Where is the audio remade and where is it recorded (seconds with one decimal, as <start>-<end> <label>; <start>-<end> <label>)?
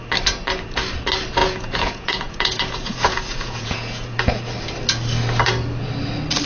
0.0-1.4 recorded; 1.4-4.4 remade; 4.4-6.5 recorded